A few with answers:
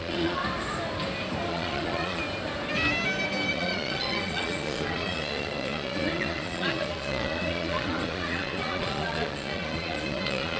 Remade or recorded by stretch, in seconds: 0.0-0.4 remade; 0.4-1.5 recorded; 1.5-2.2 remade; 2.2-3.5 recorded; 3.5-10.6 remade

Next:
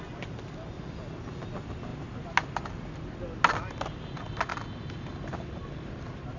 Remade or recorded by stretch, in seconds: 0.0-6.4 recorded

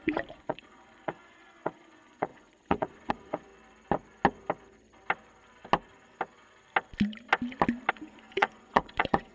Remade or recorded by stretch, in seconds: 0.0-3.5 remade; 3.5-7.9 recorded; 7.9-9.3 remade

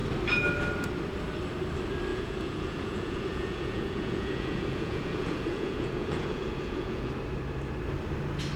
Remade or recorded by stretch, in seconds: 0.0-2.1 recorded; 2.1-7.1 remade; 7.1-8.6 recorded